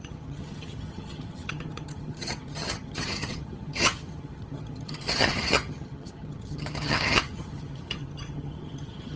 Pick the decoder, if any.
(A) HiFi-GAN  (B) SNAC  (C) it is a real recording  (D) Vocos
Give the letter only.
A